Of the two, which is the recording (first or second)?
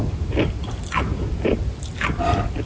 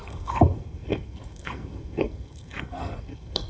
first